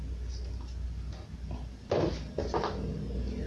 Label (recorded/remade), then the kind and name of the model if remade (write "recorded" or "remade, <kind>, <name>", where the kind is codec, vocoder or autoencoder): recorded